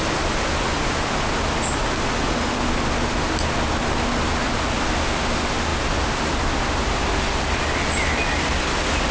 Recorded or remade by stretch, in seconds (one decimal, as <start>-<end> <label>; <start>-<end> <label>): 0.0-9.1 recorded